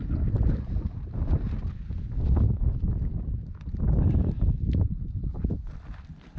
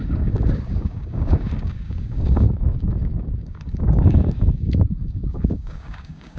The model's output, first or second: second